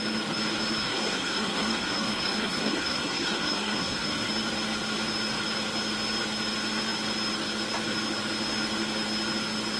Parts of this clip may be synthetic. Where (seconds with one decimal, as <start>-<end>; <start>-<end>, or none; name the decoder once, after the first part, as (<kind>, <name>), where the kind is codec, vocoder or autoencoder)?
0.8-4.3 (codec, SNAC)